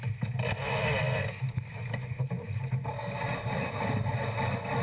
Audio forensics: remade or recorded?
recorded